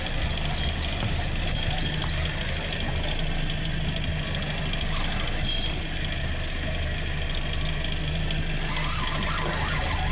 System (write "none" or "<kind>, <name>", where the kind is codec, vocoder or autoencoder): none